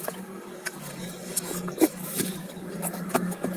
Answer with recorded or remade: remade